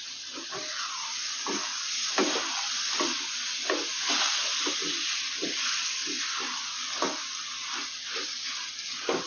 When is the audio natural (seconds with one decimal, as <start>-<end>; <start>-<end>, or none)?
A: 0.0-1.7; 3.0-9.3

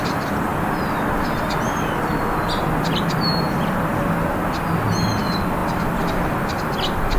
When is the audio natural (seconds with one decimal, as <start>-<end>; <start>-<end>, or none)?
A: 3.9-5.1

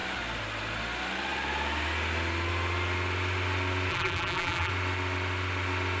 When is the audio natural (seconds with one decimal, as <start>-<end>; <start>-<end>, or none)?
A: 0.0-3.9; 4.7-6.0